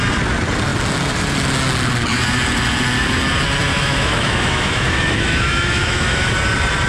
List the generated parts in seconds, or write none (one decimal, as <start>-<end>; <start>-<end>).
3.7-6.3

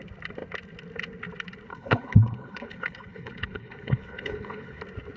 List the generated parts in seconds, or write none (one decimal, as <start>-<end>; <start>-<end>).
1.7-4.8

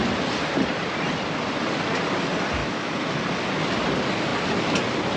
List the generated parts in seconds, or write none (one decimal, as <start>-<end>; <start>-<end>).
2.6-3.2

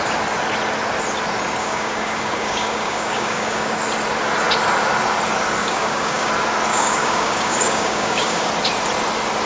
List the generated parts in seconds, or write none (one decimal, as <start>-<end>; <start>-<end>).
1.6-3.8; 5.6-6.3; 6.7-8.5

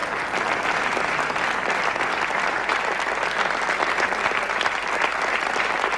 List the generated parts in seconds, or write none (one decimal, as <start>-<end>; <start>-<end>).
none